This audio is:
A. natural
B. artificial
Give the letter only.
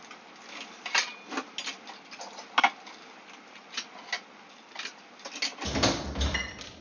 A